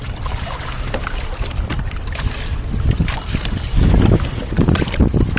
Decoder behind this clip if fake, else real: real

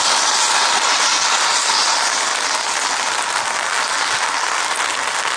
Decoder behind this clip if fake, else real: real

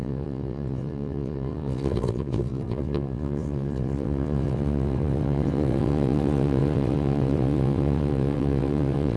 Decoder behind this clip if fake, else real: fake, vocoder, WaveNeXt